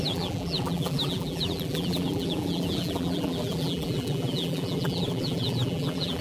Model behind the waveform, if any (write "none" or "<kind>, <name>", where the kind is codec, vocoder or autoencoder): vocoder, BigVGAN v2